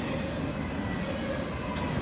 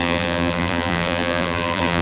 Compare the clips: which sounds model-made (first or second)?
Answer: second